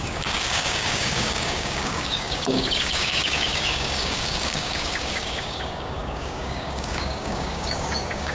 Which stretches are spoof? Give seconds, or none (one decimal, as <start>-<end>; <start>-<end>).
0.0-8.3